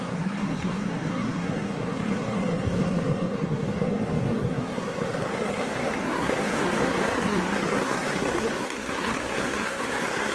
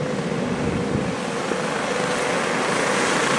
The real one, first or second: second